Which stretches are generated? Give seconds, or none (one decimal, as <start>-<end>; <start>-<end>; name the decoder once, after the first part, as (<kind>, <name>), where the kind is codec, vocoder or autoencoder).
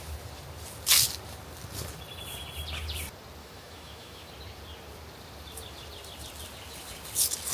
3.4-4.3 (autoencoder, DAC-VAE)